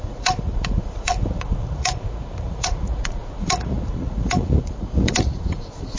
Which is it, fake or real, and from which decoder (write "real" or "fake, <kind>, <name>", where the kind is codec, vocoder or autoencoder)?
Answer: fake, vocoder, Vocos